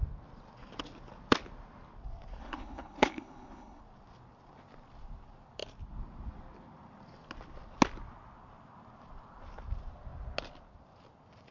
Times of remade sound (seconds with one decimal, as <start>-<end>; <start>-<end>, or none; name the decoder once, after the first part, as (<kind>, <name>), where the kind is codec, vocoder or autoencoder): 2.4-3.8 (codec, HILCodec)